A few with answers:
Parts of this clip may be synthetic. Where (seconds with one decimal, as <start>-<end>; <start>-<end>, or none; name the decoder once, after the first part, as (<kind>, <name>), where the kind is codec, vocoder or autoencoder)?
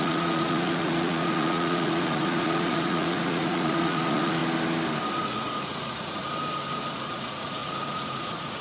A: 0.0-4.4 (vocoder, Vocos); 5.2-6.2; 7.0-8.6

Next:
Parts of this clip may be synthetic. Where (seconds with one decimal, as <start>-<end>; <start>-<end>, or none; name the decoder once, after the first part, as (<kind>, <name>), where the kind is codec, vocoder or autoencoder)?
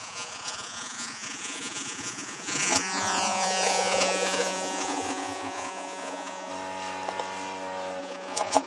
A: 0.0-6.5 (vocoder, Vocos); 8.0-8.7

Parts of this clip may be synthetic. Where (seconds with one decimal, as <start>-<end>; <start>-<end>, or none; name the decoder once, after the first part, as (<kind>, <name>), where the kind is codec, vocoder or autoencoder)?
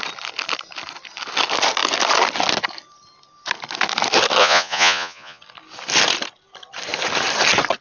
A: 4.4-5.4 (vocoder, Vocos)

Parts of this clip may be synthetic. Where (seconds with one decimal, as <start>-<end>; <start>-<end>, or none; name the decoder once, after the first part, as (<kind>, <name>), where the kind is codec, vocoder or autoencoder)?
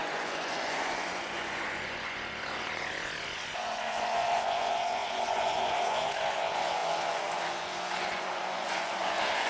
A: 0.0-9.5 (vocoder, Vocos)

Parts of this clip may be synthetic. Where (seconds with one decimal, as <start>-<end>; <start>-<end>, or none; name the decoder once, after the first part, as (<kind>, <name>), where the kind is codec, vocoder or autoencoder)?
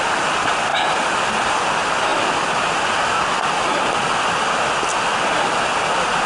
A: none